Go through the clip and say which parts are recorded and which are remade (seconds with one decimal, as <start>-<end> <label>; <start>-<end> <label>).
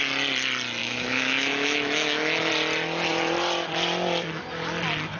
0.0-0.8 recorded; 0.8-2.5 remade; 2.5-5.2 recorded